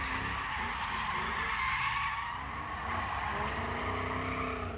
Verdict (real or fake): real